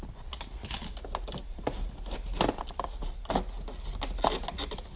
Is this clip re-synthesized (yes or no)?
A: no